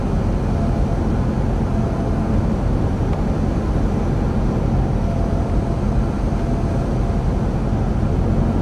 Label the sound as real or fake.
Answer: real